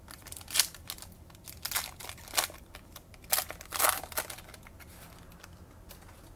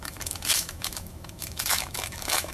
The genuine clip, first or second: first